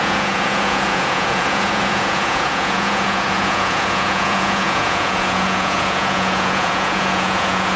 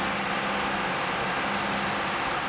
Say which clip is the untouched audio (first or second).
second